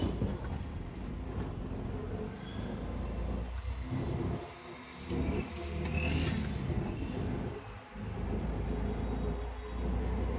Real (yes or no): yes